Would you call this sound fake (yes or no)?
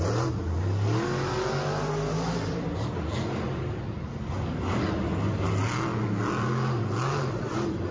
no